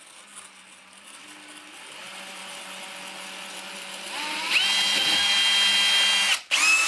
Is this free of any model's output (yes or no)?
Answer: yes